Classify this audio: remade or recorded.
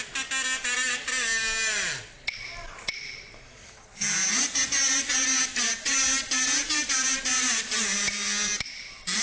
recorded